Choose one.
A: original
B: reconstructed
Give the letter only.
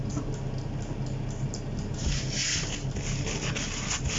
A